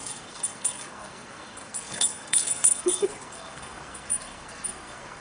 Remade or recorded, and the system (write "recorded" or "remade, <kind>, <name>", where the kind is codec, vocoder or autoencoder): remade, codec, SNAC